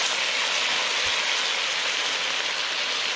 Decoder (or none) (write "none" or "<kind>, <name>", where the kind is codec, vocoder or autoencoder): none